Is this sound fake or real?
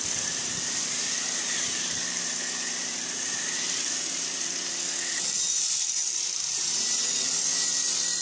fake